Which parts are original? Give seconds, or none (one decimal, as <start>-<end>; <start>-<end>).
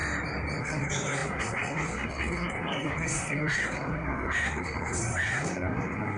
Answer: 0.0-0.6